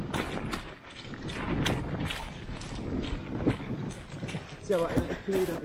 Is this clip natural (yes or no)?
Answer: yes